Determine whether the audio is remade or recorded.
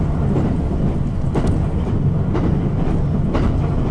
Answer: recorded